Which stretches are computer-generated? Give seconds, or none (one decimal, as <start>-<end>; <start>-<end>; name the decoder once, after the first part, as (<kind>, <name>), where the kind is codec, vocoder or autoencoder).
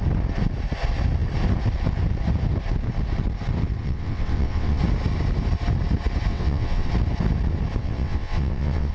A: 3.8-4.8 (vocoder, WaveNeXt); 6.3-6.9; 7.8-8.9